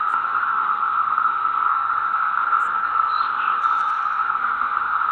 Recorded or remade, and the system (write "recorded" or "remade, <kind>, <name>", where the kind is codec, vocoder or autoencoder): remade, codec, SNAC